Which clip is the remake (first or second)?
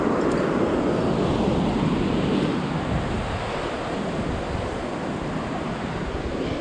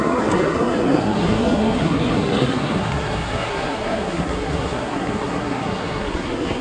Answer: second